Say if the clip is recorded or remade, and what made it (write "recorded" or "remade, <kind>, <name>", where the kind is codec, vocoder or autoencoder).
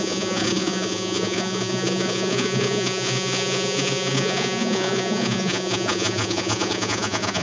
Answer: remade, vocoder, Vocos